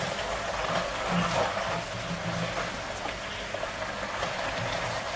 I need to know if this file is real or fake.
real